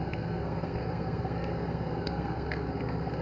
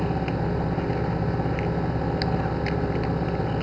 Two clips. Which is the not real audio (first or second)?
first